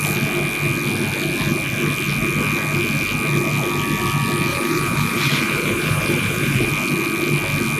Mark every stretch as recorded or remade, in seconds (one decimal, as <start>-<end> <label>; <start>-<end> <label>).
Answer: 0.0-4.5 recorded; 4.5-6.7 remade; 6.7-7.8 recorded